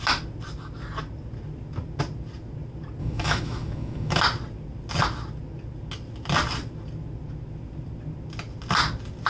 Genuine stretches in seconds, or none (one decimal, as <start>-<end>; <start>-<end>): 0.0-3.0; 4.2-9.3